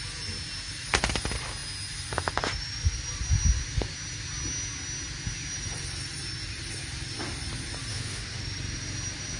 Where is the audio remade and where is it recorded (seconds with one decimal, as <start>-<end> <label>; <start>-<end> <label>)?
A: 0.0-7.9 recorded; 7.9-8.4 remade; 8.4-9.4 recorded

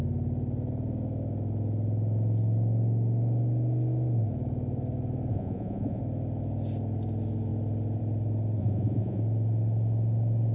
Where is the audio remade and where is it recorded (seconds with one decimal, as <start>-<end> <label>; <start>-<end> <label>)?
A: 0.0-5.3 recorded; 5.3-6.0 remade; 6.0-8.6 recorded; 8.6-9.2 remade; 9.2-10.5 recorded

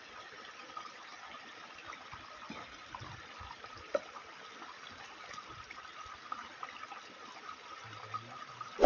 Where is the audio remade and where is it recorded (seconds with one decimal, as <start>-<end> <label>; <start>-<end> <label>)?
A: 0.0-8.9 recorded

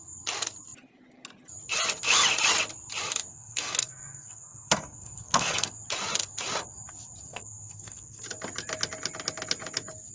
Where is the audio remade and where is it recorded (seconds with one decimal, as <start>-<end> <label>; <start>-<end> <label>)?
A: 0.0-3.3 recorded; 3.3-5.7 remade; 5.7-7.3 recorded; 7.3-8.2 remade; 8.2-10.1 recorded

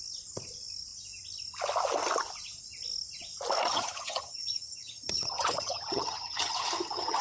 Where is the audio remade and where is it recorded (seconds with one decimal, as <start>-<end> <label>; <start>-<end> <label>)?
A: 0.0-3.7 recorded; 3.7-7.2 remade